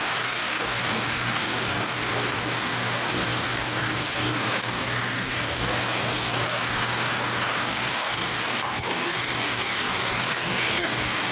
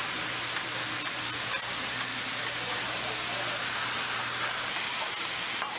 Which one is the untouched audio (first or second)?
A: second